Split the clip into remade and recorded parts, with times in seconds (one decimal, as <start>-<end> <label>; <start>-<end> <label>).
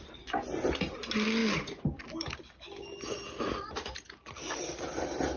0.0-5.4 recorded